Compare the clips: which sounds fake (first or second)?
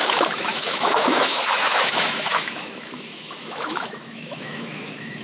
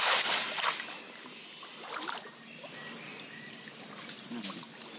first